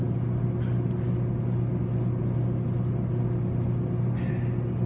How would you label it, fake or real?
real